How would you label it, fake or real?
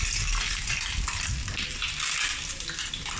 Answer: real